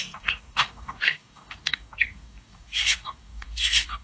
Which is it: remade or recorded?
remade